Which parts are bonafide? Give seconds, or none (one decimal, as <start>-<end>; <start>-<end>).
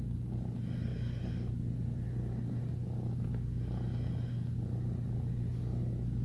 0.0-6.2